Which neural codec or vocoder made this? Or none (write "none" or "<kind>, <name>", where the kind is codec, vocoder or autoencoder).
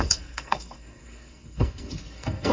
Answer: codec, SNAC